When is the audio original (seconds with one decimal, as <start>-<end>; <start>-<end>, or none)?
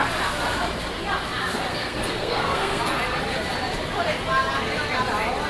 0.0-1.7; 2.8-5.5